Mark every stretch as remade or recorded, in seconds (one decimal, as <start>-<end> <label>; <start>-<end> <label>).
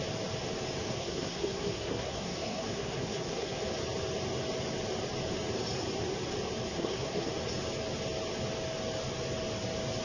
0.0-0.9 recorded; 0.9-3.6 remade; 3.6-6.7 recorded; 6.7-7.3 remade; 7.3-10.0 recorded